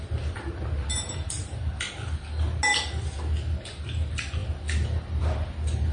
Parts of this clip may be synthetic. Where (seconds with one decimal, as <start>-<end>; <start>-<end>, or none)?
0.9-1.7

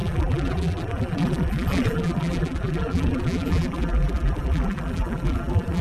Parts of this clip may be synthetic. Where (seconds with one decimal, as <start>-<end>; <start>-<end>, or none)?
0.0-5.8

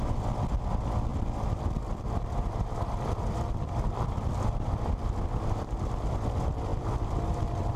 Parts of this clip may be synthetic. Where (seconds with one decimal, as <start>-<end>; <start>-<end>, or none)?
1.1-5.8; 6.7-7.8

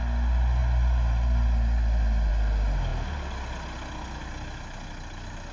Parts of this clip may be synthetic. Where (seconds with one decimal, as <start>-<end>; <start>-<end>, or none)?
none

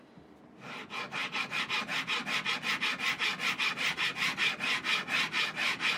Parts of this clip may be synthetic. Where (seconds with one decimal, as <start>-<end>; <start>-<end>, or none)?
none

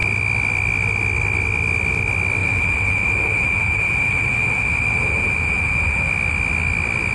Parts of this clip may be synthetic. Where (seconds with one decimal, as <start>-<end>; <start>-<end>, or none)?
2.4-6.1